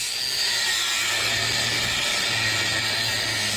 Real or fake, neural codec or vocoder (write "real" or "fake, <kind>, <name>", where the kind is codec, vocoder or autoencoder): real